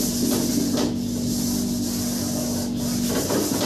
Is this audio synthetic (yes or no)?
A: no